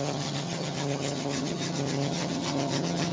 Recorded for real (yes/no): no